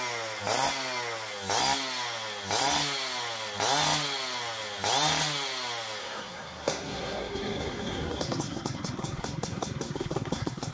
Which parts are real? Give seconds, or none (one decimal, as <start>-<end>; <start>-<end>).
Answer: 0.0-6.0